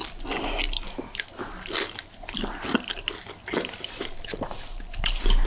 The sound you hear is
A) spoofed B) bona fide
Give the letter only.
B